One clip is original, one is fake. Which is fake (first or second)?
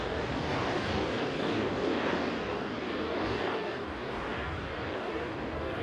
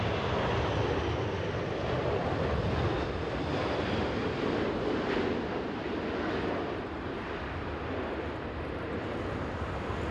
first